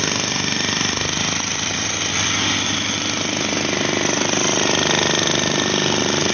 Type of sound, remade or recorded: recorded